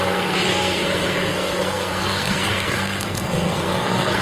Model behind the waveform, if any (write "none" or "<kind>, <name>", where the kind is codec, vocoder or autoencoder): codec, SNAC